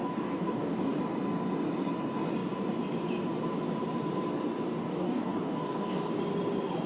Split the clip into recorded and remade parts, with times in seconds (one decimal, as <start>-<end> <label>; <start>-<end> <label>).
0.0-1.0 remade; 1.0-4.8 recorded; 4.8-6.1 remade; 6.1-6.9 recorded